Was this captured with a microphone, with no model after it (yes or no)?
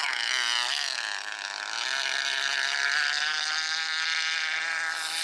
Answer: yes